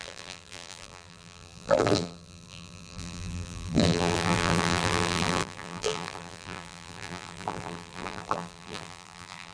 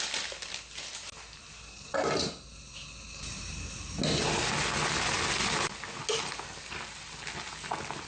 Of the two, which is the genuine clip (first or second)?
second